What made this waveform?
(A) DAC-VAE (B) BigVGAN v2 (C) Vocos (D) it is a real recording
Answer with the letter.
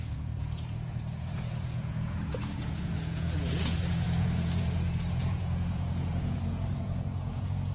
C